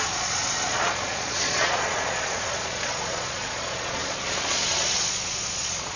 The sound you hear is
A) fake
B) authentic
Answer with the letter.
A